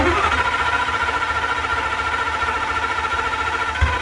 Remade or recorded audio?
recorded